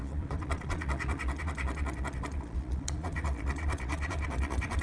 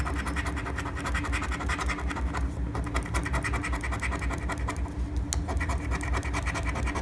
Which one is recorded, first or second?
second